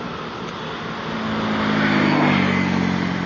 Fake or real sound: real